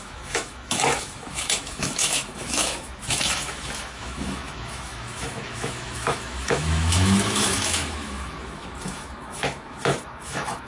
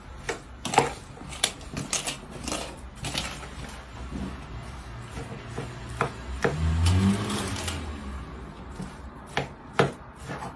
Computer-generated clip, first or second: first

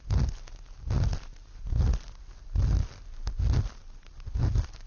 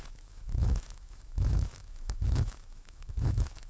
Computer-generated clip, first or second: second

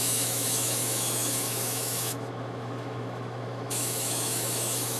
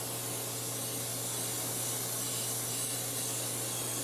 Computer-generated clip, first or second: first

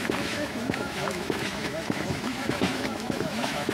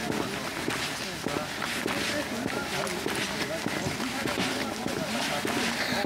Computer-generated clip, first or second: first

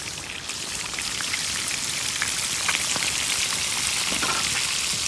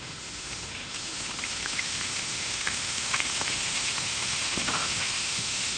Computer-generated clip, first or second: second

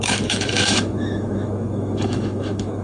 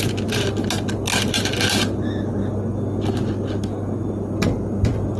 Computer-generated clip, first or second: first